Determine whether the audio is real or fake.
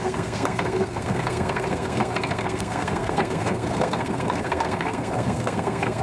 fake